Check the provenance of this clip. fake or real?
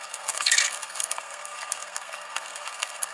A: fake